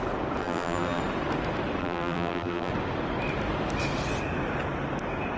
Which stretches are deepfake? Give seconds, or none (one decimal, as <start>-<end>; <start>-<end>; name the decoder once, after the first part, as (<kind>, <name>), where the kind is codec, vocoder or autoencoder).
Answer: 0.4-1.0 (vocoder, BigVGAN v2); 1.8-2.7